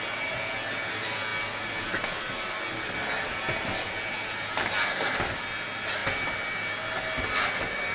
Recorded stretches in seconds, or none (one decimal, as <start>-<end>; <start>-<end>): 0.0-7.9